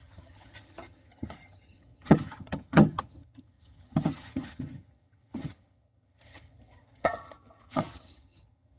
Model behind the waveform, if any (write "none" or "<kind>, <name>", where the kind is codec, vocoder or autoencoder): vocoder, HiFi-GAN